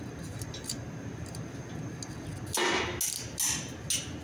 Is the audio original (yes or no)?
yes